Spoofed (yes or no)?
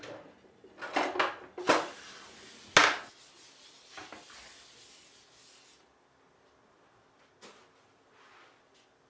no